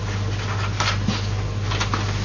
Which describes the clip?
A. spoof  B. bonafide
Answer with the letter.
B